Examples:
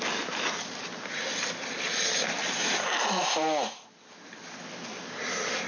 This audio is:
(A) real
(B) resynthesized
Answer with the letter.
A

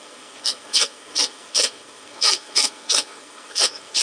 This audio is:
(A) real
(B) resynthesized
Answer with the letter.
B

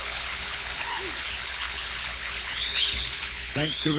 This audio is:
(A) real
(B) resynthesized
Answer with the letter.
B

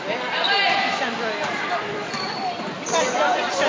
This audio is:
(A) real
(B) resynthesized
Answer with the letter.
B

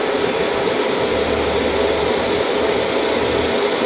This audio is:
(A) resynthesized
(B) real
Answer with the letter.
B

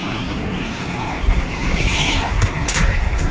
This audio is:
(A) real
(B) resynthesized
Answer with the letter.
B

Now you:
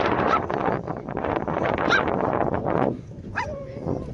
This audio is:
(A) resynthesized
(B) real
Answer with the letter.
A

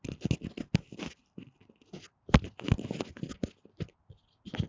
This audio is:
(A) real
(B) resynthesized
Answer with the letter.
A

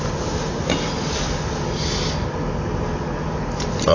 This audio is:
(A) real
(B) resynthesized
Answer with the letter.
A